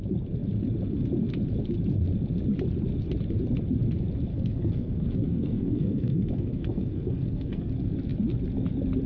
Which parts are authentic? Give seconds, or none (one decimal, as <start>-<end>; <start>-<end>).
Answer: 0.0-4.3; 7.7-9.1